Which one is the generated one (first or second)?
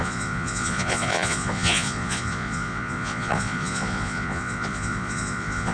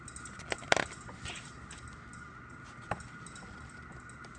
first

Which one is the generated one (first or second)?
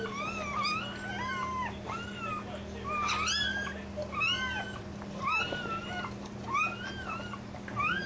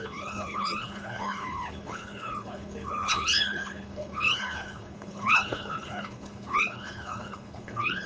second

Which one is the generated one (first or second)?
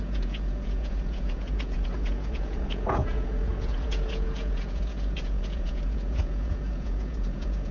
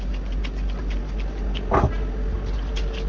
first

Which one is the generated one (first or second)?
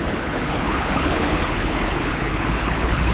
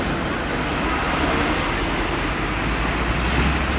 first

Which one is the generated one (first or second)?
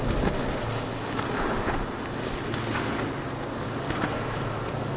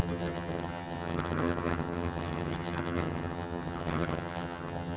second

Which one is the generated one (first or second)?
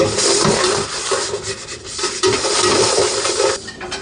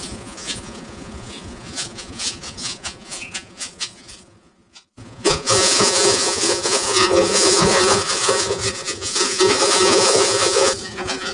second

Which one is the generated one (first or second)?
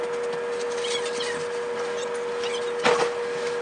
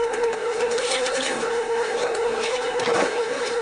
second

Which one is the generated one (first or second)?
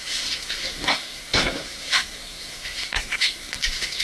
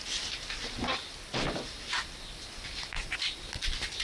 first